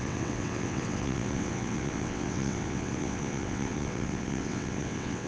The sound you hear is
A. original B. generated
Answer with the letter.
B